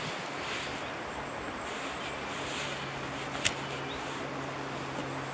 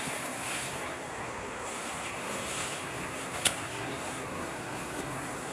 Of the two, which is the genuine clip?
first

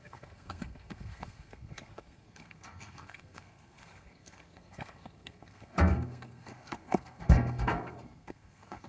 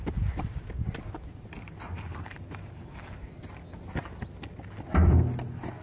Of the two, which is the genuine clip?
second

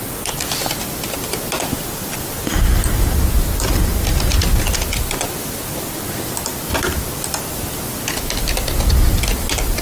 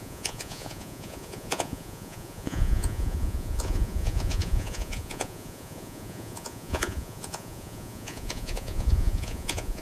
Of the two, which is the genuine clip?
first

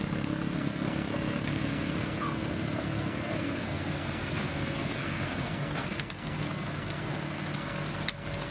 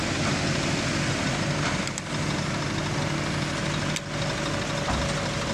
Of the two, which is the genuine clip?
second